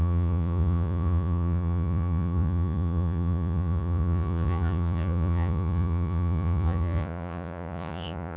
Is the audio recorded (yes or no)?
no